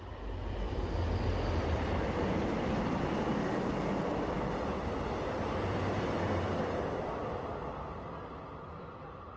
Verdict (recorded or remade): recorded